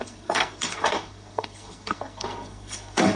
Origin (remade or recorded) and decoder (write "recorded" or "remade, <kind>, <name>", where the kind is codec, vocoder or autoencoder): remade, codec, SNAC